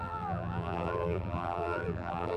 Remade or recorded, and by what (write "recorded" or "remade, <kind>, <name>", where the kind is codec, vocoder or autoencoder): remade, vocoder, BigVGAN v2